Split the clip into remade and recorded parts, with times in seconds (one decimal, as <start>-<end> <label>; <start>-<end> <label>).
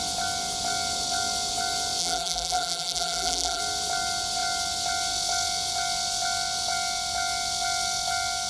0.0-2.0 recorded; 2.0-3.6 remade; 3.6-8.5 recorded